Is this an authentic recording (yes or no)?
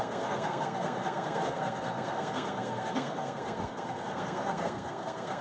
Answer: no